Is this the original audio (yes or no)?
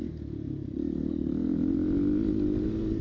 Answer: yes